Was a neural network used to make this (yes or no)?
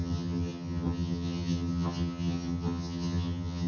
yes